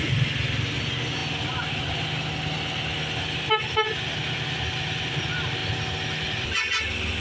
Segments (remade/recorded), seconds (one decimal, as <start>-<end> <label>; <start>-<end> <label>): 0.0-7.2 recorded